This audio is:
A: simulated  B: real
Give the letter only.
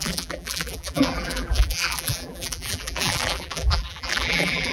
A